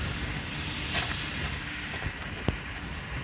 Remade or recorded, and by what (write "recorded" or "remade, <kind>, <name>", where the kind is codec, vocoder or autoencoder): recorded